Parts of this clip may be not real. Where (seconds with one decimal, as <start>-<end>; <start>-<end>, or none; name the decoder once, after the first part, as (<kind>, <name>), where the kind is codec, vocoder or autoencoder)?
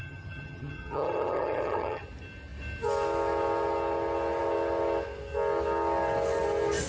0.0-2.0 (vocoder, HiFi-GAN)